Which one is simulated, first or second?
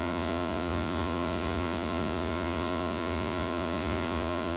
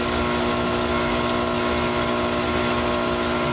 first